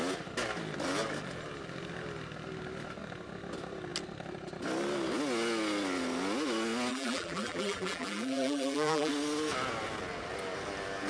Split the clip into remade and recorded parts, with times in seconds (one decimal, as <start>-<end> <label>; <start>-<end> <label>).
0.0-6.9 recorded; 6.9-9.1 remade; 9.1-11.1 recorded